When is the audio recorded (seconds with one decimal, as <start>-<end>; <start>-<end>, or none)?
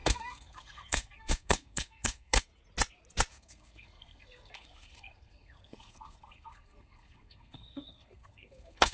2.5-3.3